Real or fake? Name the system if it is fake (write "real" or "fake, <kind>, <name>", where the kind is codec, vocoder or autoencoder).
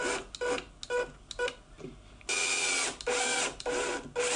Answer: real